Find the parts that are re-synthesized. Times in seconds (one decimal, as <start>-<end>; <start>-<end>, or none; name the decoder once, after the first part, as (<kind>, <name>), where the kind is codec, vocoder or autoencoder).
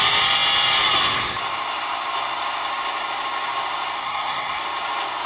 4.0-4.6 (codec, SNAC)